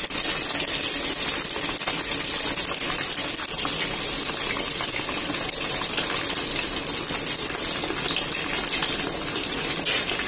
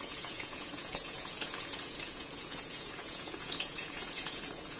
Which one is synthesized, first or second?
second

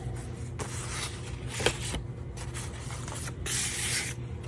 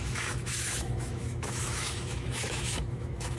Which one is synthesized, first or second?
second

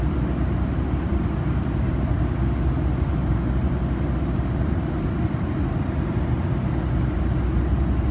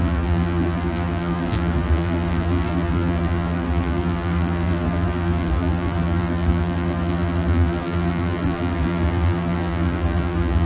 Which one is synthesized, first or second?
second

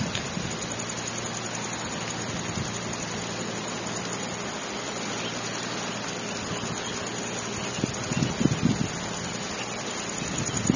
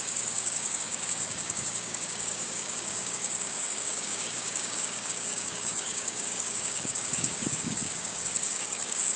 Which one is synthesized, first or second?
second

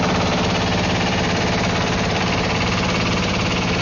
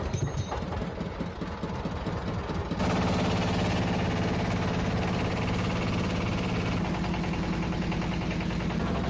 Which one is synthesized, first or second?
first